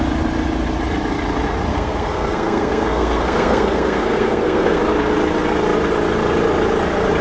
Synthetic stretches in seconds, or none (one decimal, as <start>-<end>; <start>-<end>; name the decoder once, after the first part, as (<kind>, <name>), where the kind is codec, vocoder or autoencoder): 1.7-4.8 (codec, SNAC)